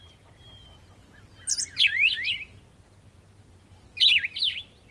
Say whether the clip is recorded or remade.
recorded